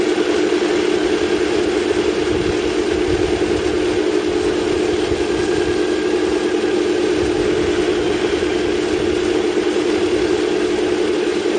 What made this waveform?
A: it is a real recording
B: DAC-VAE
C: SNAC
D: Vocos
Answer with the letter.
A